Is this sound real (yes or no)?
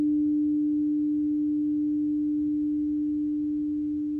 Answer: yes